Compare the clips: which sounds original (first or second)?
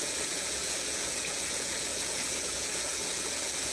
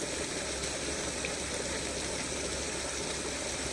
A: second